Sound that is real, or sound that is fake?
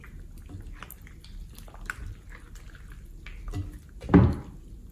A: real